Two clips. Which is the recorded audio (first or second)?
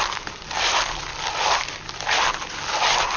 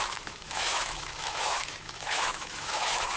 first